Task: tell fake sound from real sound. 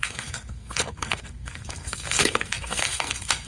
fake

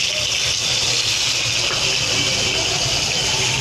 real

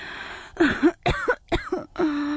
real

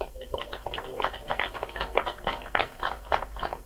fake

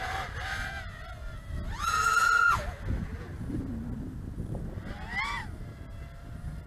real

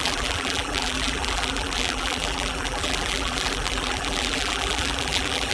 fake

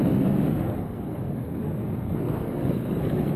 fake